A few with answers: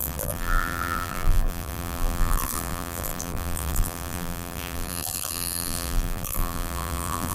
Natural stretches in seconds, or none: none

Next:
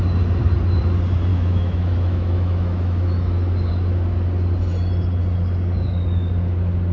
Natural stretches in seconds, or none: 0.0-1.3; 3.7-6.9

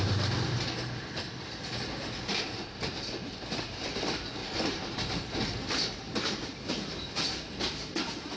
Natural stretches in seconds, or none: 0.0-4.4; 7.1-8.4